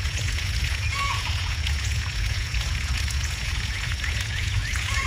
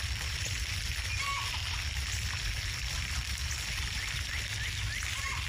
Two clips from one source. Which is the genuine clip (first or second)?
second